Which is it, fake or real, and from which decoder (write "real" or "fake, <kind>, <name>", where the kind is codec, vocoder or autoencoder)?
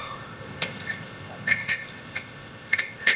fake, codec, ZipCodec